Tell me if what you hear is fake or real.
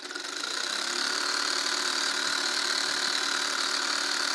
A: fake